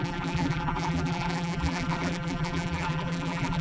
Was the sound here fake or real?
fake